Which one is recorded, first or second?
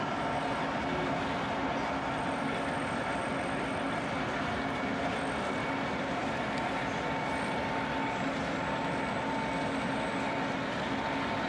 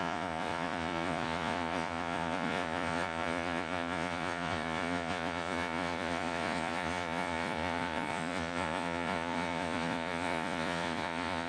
first